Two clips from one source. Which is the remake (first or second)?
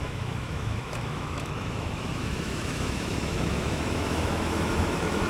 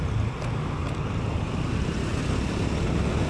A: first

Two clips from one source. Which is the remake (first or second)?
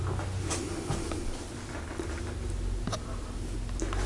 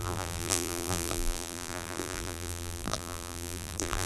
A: second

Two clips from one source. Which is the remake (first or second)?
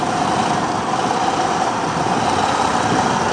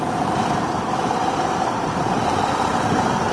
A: second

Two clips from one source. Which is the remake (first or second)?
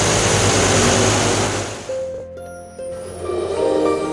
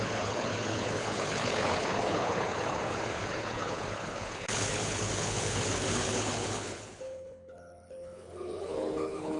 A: second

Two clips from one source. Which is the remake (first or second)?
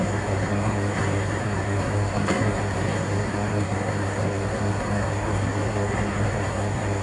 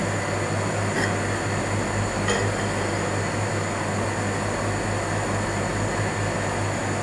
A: first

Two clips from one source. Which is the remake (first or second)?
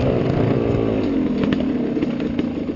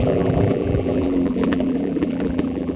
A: second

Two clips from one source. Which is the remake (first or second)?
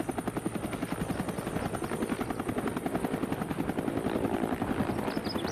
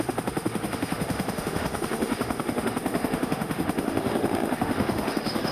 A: second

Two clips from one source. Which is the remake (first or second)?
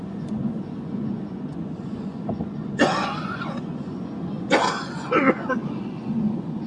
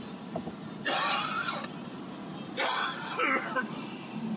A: first